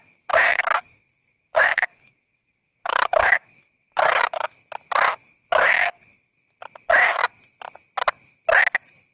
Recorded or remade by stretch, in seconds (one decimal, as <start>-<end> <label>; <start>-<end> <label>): 0.0-0.5 recorded; 0.5-4.2 remade; 4.2-5.2 recorded; 5.2-6.4 remade; 6.4-9.1 recorded